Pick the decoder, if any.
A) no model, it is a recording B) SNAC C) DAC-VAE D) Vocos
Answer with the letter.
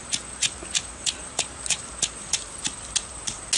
A